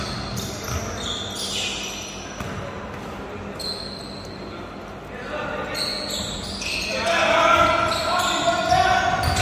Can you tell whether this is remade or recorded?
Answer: recorded